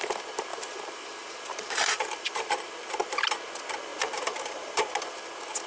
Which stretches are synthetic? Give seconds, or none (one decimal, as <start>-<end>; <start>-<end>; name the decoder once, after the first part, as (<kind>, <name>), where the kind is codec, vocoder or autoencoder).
0.5-2.5 (vocoder, BigVGAN v2); 3.9-4.9